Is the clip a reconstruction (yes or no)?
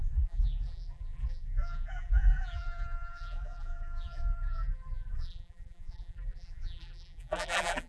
yes